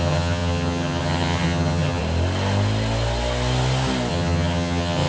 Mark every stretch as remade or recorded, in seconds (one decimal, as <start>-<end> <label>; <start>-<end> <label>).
0.0-2.0 remade; 2.0-4.1 recorded; 4.1-5.1 remade